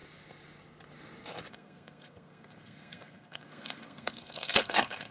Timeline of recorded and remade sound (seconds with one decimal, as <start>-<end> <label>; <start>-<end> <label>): 0.0-1.5 recorded; 1.5-5.1 remade